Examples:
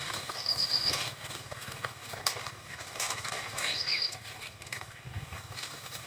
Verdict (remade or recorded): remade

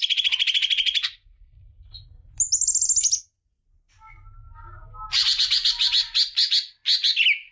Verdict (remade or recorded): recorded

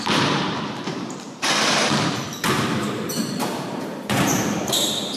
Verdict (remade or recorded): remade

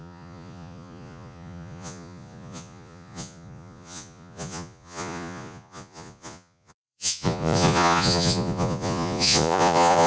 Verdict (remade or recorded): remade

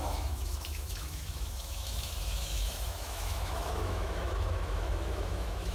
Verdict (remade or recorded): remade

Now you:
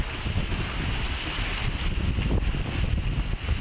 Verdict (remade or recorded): recorded